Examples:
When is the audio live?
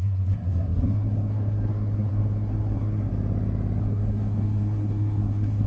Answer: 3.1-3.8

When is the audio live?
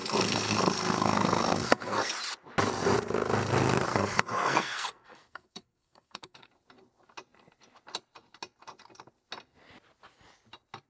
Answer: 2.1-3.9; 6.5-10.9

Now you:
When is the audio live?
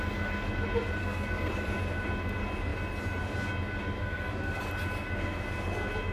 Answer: 0.0-1.0; 1.5-4.0; 4.6-6.1